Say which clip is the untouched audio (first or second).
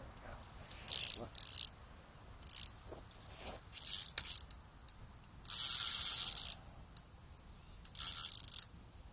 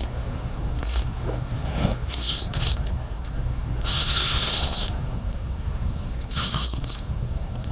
first